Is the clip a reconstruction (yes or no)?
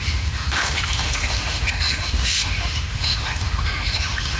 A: yes